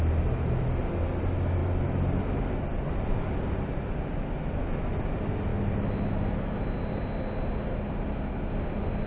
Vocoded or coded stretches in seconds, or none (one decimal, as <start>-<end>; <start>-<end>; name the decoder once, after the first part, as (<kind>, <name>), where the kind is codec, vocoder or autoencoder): none